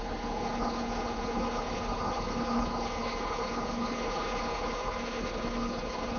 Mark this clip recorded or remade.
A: remade